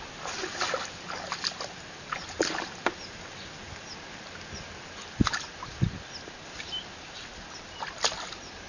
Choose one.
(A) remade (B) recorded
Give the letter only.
B